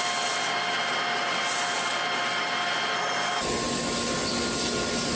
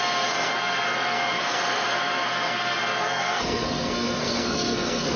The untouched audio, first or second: first